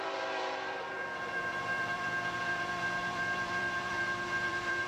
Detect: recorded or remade remade